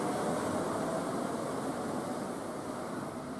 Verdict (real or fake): real